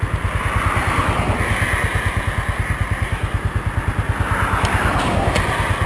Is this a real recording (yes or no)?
yes